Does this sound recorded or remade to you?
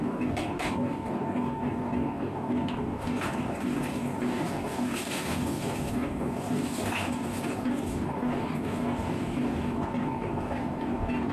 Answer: remade